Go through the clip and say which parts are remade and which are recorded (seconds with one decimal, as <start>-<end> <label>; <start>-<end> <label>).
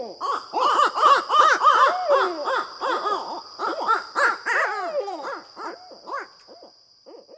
0.0-7.4 recorded